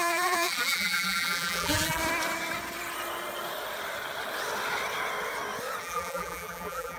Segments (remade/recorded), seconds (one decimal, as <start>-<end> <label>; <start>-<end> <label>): 0.0-2.0 remade; 2.0-5.8 recorded; 5.8-7.0 remade